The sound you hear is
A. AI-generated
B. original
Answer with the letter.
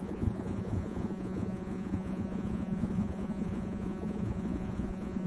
A